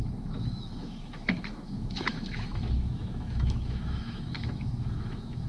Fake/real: fake